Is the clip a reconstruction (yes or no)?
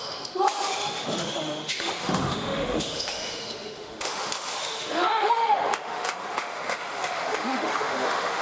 yes